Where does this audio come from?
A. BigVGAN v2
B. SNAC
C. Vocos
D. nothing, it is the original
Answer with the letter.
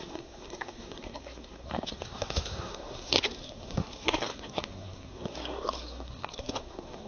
B